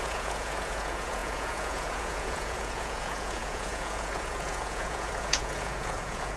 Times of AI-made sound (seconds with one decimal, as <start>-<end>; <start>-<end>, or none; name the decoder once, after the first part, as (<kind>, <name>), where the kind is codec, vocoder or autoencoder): 0.0-6.4 (vocoder, Vocos)